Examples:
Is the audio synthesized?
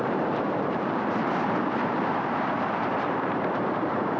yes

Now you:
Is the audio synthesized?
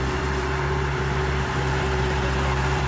yes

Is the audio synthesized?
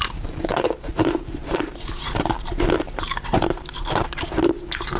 yes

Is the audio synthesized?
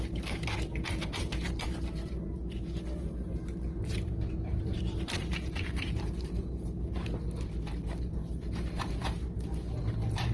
yes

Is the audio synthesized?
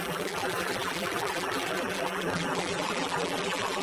yes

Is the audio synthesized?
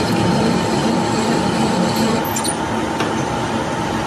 no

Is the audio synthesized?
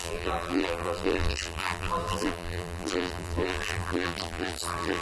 yes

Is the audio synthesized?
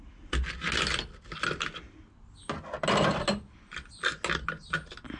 no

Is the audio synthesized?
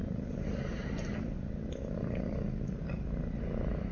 no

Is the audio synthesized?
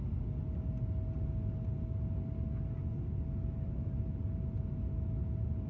no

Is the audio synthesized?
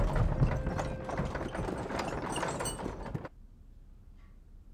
no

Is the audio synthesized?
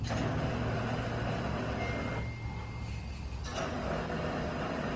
no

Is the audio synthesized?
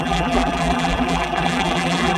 yes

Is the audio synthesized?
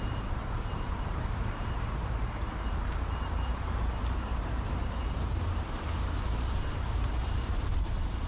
yes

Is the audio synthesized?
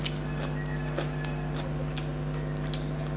no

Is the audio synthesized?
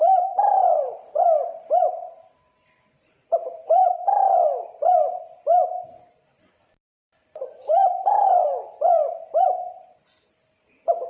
yes